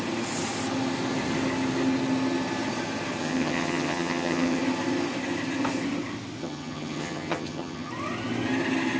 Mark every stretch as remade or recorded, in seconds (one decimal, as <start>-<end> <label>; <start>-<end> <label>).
0.0-3.2 recorded; 3.2-4.6 remade; 4.6-6.4 recorded; 6.4-7.9 remade; 7.9-9.0 recorded